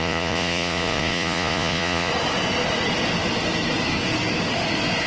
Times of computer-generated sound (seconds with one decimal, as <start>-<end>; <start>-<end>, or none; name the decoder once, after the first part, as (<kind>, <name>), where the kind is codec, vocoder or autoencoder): 0.0-2.1 (vocoder, Vocos)